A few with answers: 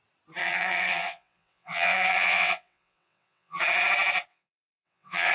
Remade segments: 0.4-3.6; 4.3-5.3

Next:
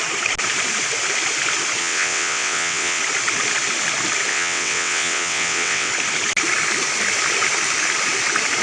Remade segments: 1.8-3.0; 4.3-5.9

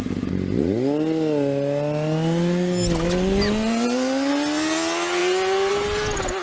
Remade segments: none

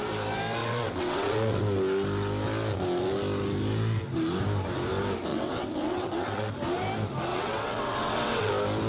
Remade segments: 0.6-1.6; 5.3-6.5; 7.3-8.5

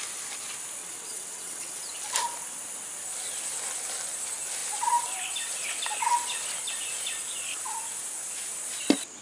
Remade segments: 0.8-1.8

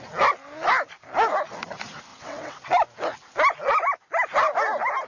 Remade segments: 2.1-2.7

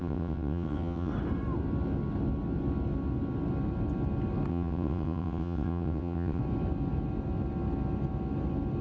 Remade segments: 0.0-1.1; 4.5-6.4

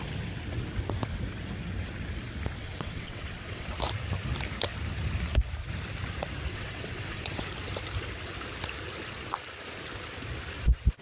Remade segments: 2.6-3.7; 6.5-7.5